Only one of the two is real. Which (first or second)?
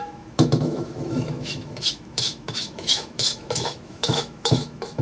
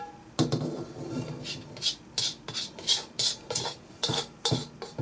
second